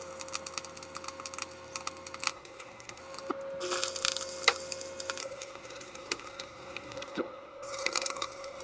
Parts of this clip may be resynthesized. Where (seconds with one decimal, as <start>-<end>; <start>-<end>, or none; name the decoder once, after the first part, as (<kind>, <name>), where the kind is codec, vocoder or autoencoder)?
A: 2.3-3.0 (codec, SNAC); 5.2-8.6